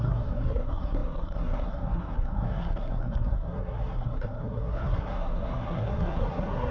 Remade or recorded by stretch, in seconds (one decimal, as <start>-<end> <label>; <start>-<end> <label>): 0.0-6.7 remade